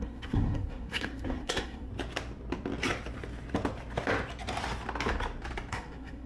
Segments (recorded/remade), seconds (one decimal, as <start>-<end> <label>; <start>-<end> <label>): 0.0-1.9 remade; 1.9-5.7 recorded; 5.7-6.3 remade